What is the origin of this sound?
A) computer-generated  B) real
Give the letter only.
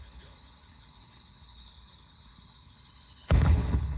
A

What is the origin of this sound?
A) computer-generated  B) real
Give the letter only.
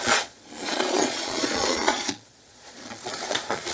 A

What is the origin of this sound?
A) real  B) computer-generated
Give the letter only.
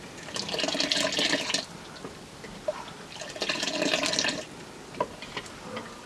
A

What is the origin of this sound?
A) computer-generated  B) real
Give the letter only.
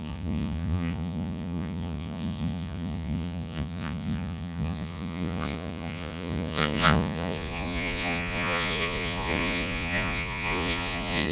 A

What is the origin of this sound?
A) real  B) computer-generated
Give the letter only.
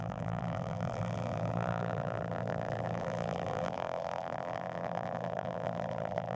B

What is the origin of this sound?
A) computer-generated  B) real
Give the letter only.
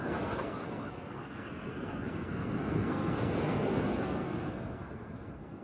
A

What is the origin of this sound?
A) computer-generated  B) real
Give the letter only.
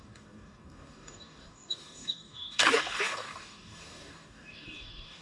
A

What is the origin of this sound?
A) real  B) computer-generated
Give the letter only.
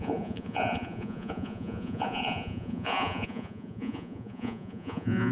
B